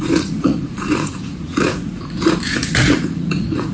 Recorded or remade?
remade